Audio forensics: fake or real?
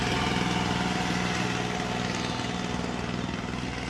real